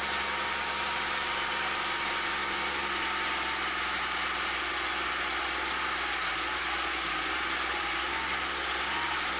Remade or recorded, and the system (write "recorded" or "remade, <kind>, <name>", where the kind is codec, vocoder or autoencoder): recorded